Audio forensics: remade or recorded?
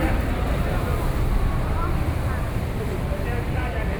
remade